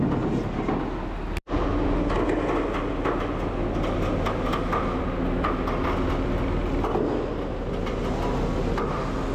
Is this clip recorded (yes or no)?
yes